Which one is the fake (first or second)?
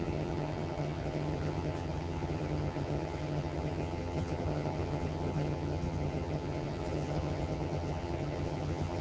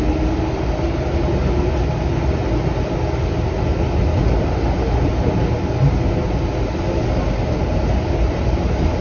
first